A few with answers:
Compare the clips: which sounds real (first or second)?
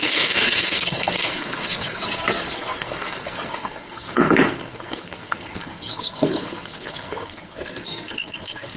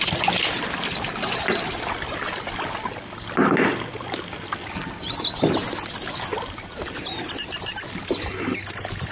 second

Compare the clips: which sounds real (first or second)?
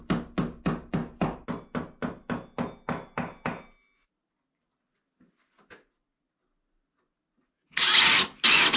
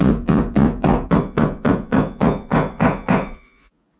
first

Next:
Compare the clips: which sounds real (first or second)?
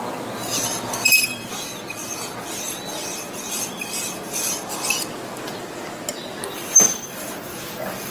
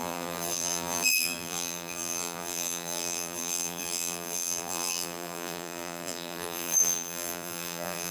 first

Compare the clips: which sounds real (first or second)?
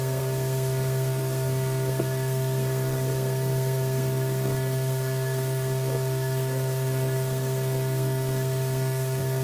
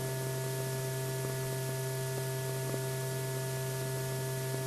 second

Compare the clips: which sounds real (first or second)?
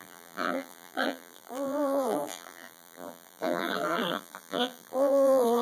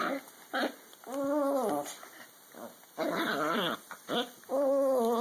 second